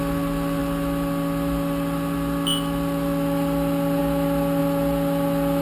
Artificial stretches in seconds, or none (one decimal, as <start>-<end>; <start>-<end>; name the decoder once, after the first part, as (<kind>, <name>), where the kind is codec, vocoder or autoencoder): none